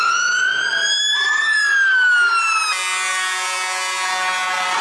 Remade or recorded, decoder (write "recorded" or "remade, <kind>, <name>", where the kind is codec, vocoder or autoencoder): recorded